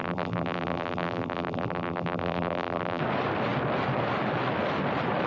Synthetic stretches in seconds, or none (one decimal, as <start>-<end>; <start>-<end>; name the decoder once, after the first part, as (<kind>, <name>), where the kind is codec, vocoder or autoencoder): 0.0-3.0 (vocoder, BigVGAN v2)